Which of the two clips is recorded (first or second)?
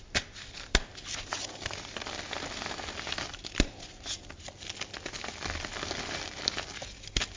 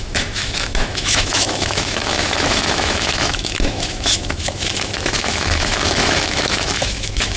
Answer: first